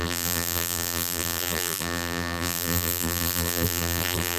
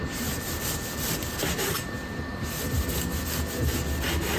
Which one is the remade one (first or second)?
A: first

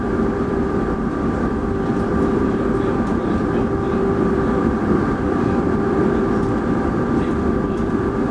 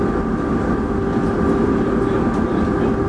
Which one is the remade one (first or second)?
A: first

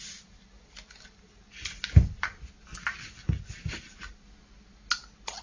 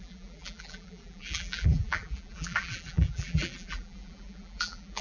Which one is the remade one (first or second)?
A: second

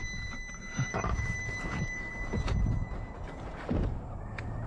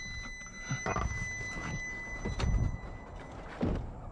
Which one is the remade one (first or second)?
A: first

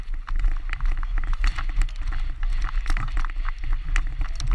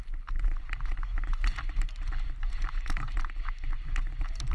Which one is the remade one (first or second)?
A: second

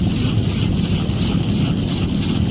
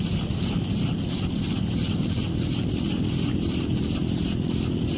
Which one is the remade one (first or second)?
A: second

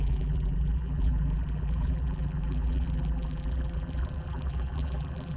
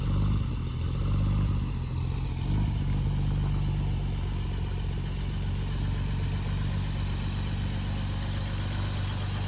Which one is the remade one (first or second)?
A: first